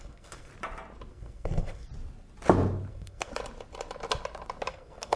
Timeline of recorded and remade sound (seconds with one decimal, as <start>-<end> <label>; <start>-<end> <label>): 0.0-0.5 remade; 0.5-1.1 recorded; 1.1-1.9 remade; 1.9-2.9 recorded; 2.9-3.3 remade; 3.3-4.7 recorded; 4.7-5.2 remade

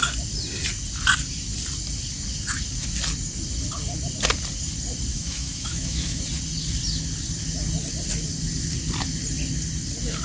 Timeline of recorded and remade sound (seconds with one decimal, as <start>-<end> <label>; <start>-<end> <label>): 0.0-5.1 recorded; 5.1-6.2 remade; 6.2-10.2 recorded

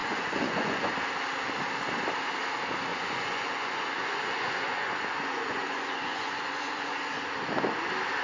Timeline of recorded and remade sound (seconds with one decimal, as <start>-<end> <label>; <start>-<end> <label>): 0.0-0.9 remade; 0.9-2.9 recorded; 2.9-7.0 remade; 7.0-8.2 recorded

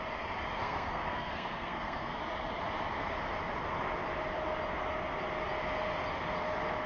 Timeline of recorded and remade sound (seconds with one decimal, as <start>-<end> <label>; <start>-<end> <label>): 0.0-0.6 recorded; 0.6-2.2 remade; 2.2-6.9 recorded

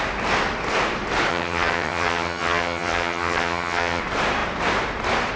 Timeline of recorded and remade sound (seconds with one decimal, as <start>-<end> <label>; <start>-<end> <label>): 0.0-1.3 recorded; 1.3-4.0 remade; 4.0-5.4 recorded

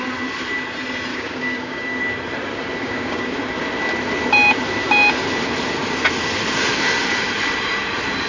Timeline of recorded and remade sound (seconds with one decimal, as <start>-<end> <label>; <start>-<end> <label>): 0.0-1.1 recorded; 1.1-2.0 remade; 2.0-2.8 recorded; 2.8-3.4 remade; 3.4-8.3 recorded